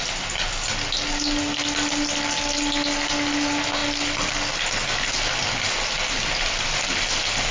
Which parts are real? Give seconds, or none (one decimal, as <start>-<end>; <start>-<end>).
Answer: 0.0-7.5